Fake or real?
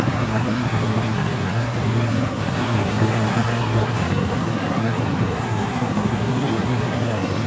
fake